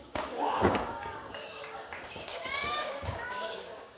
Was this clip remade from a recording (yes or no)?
yes